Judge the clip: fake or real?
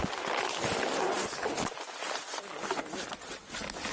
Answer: real